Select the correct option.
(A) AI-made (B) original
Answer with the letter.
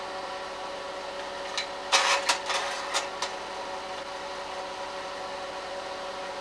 B